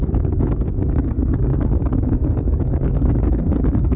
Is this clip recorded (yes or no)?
no